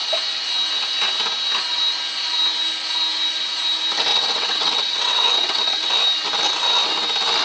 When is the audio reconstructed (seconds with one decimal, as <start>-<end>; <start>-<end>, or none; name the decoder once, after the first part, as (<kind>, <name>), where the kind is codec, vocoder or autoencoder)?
4.1-5.9 (vocoder, WaveNeXt)